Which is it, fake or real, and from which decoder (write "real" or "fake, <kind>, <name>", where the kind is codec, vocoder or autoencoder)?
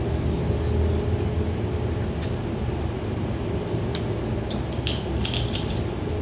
real